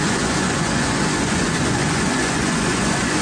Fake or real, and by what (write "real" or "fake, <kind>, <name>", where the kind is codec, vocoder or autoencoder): fake, vocoder, Vocos